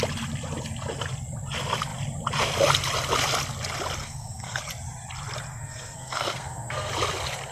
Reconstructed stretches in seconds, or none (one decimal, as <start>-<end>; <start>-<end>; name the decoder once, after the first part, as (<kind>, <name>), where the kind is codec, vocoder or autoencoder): 4.0-4.6 (codec, SNAC); 5.5-6.9